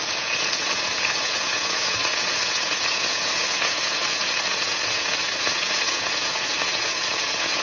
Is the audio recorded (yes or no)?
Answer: no